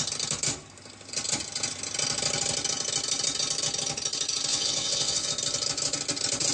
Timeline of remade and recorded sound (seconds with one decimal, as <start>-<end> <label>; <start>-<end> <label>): 0.0-4.5 recorded; 4.5-5.3 remade; 5.3-6.5 recorded